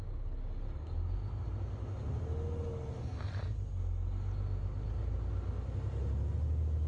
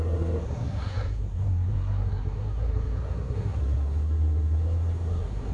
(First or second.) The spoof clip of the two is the second